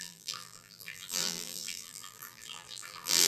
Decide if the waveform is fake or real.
fake